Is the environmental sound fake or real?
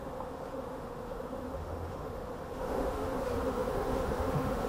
fake